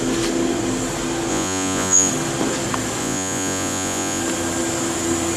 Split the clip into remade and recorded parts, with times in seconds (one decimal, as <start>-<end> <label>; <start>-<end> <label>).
0.0-1.3 recorded; 1.3-2.1 remade; 2.1-3.0 recorded; 3.0-4.2 remade; 4.2-5.4 recorded